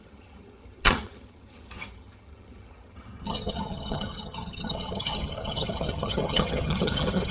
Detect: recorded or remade remade